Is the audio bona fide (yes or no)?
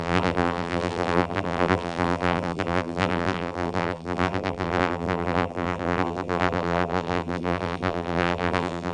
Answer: no